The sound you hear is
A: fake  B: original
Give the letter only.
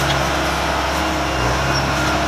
B